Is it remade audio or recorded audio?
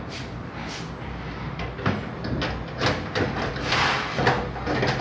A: recorded